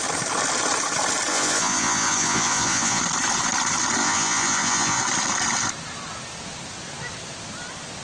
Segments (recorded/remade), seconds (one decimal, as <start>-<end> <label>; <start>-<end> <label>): 0.0-1.3 recorded; 1.3-3.0 remade; 3.0-4.0 recorded; 4.0-5.0 remade; 5.0-8.0 recorded